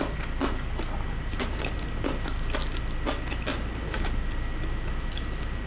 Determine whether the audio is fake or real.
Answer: real